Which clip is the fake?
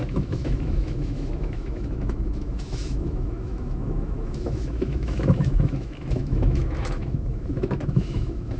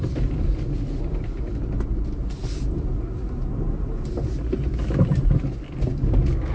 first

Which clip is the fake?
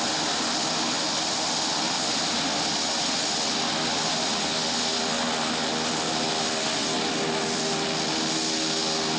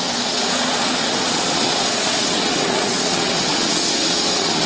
second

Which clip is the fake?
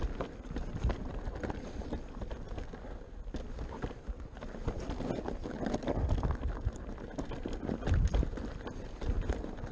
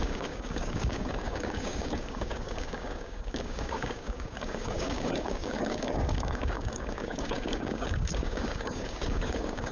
second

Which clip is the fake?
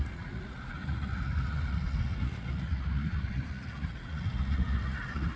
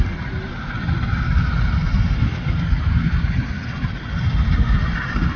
first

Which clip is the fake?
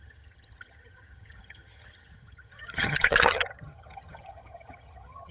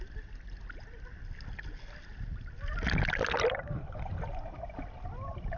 first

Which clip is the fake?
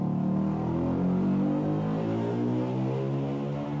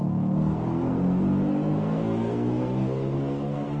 second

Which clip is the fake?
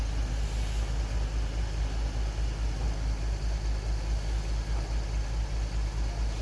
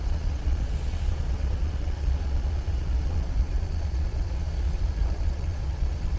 second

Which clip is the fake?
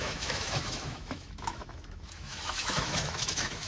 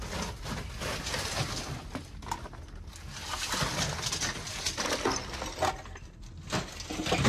first